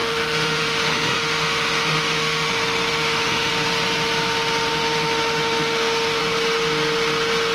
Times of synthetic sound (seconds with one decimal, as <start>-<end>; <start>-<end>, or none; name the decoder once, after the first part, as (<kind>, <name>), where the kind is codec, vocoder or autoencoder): 0.0-2.5 (autoencoder, DAC-VAE); 2.9-3.5; 4.7-6.2